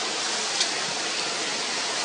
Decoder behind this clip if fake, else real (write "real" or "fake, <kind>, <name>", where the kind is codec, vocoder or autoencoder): real